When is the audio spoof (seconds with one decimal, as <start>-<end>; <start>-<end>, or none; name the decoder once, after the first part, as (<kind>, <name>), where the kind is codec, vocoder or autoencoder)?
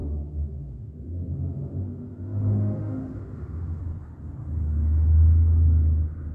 0.0-3.8 (autoencoder, DAC-VAE)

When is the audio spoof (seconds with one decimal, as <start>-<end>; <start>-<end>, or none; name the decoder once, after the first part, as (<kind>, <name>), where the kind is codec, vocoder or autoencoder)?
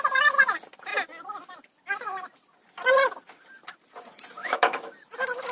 4.4-4.9 (autoencoder, DAC-VAE)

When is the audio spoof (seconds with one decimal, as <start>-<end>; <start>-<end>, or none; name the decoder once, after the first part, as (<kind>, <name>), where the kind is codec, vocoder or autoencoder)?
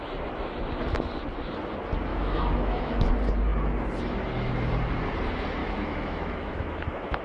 2.1-3.1 (autoencoder, DAC-VAE); 5.6-7.2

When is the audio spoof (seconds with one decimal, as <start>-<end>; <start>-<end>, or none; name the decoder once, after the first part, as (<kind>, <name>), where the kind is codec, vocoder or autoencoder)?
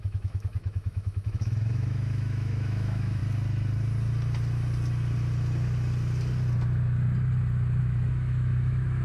0.0-3.2 (autoencoder, DAC-VAE); 7.8-9.0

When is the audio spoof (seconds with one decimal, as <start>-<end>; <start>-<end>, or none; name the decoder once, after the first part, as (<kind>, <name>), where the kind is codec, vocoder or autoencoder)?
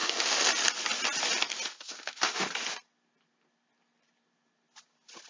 0.0-0.5 (autoencoder, DAC-VAE); 1.7-2.5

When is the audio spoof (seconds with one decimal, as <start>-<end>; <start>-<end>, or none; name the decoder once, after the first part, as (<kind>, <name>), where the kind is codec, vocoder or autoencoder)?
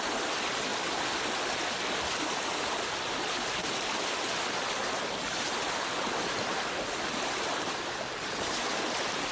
none